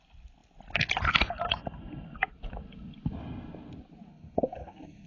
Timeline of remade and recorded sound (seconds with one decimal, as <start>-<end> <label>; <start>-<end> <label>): 0.0-4.1 recorded; 4.1-5.1 remade